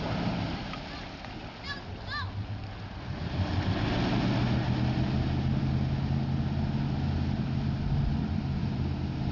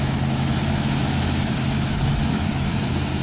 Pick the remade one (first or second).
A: second